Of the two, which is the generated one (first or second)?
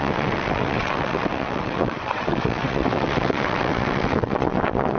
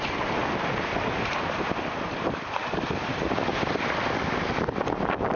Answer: first